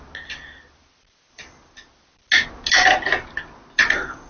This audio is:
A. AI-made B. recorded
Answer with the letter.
B